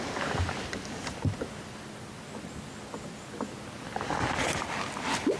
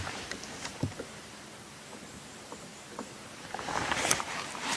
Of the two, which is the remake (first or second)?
second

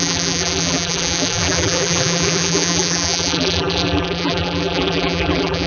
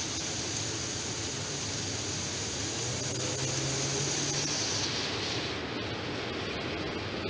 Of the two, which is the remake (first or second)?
first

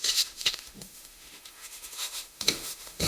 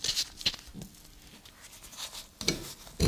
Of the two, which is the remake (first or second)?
first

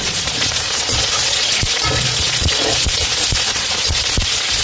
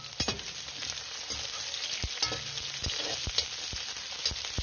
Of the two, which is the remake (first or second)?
first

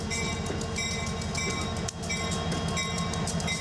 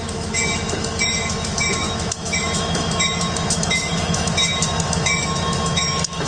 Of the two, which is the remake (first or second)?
second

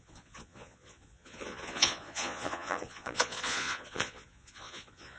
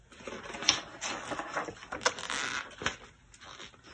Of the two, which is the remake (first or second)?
first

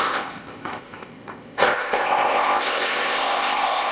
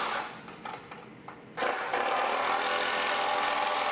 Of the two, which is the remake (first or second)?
first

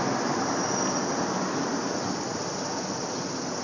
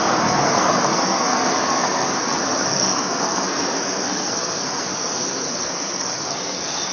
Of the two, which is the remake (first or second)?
second